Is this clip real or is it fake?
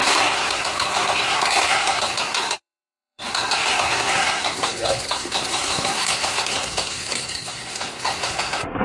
fake